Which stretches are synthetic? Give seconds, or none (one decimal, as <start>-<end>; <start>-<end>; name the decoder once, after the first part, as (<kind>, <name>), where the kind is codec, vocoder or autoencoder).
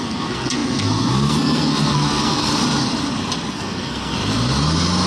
0.0-2.5 (codec, SNAC); 3.5-4.2